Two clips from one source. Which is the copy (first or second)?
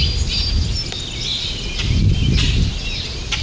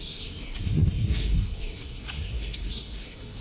second